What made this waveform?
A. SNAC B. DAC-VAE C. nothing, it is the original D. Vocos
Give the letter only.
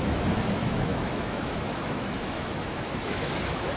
B